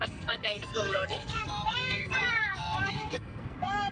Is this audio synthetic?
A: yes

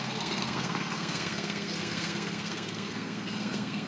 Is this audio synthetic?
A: yes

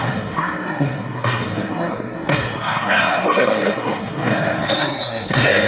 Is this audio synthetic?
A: yes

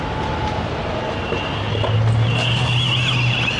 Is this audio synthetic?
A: no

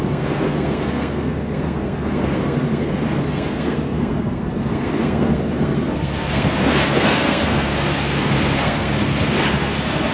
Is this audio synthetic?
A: yes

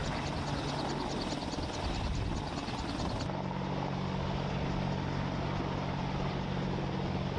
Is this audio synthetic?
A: no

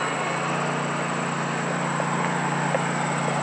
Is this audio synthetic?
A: no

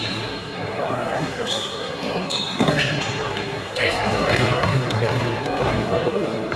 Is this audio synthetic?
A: yes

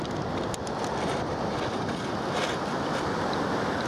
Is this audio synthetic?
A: no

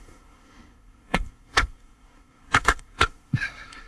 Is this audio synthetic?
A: yes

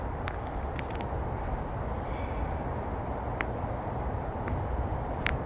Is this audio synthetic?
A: no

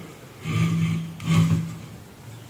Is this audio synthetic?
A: no